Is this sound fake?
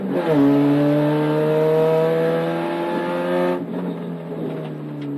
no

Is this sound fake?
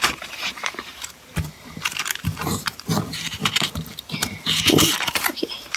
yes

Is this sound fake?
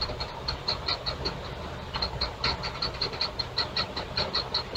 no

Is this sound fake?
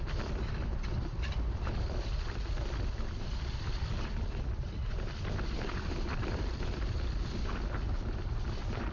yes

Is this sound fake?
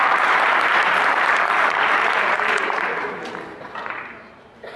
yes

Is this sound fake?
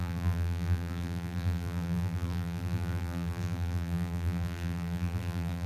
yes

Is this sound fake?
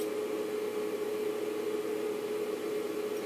no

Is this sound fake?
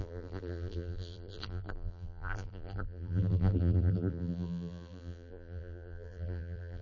yes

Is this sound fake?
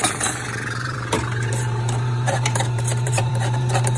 yes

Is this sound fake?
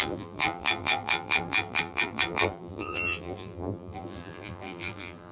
yes